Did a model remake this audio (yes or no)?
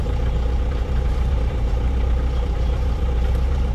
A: yes